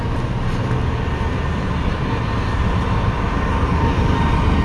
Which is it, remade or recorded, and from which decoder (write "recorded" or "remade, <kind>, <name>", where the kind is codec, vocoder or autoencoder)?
recorded